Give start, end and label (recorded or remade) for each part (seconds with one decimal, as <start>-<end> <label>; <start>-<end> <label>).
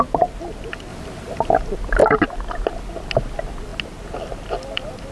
0.0-5.1 recorded